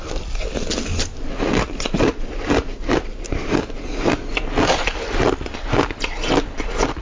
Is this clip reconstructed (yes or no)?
no